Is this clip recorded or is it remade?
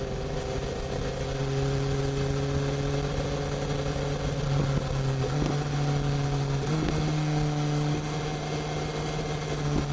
recorded